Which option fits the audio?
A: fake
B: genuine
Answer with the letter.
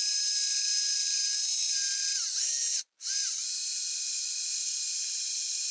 B